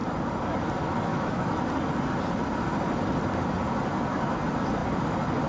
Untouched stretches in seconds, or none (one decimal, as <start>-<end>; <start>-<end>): 0.0-1.1; 1.6-5.5